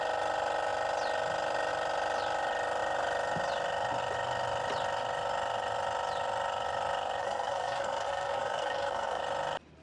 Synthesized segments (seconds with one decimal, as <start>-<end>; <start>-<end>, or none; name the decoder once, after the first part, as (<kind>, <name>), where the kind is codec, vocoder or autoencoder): 7.2-9.2 (codec, SNAC)

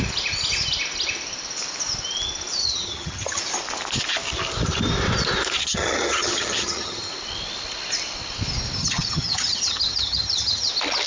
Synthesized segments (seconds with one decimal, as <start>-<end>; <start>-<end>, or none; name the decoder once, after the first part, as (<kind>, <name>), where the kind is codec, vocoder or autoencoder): 2.6-3.4 (vocoder, HiFi-GAN); 5.6-7.1; 8.8-10.7

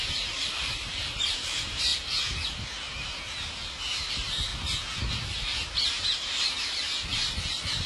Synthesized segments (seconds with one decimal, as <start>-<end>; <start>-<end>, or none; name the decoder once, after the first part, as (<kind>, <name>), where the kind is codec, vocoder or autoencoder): 0.0-1.9 (vocoder, BigVGAN v2); 4.1-4.5; 5.0-7.9

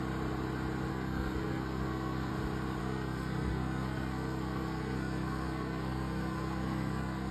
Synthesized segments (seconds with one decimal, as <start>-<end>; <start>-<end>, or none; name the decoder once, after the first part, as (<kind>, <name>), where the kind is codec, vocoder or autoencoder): 0.9-2.3 (codec, SNAC); 2.8-7.3

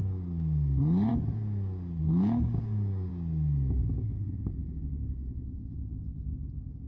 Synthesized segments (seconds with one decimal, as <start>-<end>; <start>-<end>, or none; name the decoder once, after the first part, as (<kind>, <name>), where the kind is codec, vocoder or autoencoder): 0.0-1.1 (codec, DAC); 2.0-3.1; 3.8-6.9

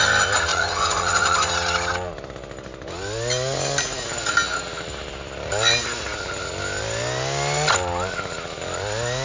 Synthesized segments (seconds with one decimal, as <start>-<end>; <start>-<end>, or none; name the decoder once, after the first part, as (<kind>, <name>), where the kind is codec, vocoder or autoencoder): 0.5-1.5 (vocoder, Vocos)

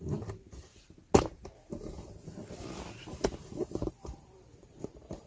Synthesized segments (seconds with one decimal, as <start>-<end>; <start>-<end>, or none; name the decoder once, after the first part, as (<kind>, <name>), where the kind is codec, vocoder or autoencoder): 0.0-0.7 (vocoder, BigVGAN v2); 3.9-5.3